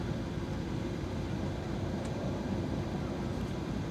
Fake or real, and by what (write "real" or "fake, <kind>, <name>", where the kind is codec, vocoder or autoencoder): fake, vocoder, BigVGAN v2